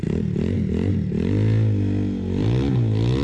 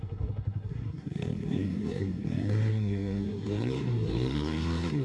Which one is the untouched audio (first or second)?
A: first